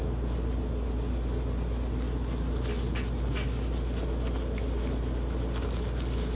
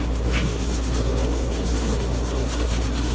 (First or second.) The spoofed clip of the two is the second